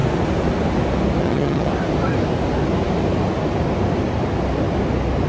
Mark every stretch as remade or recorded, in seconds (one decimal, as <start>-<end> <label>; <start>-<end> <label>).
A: 0.0-1.2 recorded; 1.2-1.7 remade; 1.7-5.3 recorded